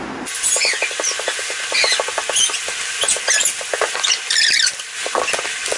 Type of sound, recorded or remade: recorded